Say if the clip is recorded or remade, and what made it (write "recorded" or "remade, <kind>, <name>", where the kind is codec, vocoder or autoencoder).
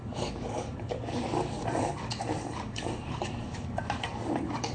remade, codec, DAC